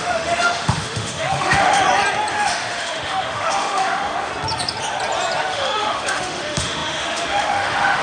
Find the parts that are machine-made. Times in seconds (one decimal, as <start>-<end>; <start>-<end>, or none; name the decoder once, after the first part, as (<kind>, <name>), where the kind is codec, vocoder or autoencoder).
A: 0.0-1.8 (autoencoder, DAC-VAE); 2.3-4.3; 5.4-8.0